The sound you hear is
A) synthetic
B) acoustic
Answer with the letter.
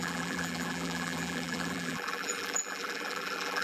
A